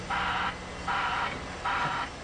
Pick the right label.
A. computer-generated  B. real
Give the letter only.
B